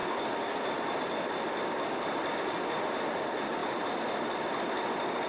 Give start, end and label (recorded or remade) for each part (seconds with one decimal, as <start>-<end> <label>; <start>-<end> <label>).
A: 0.0-3.2 recorded; 3.2-3.6 remade; 3.6-5.3 recorded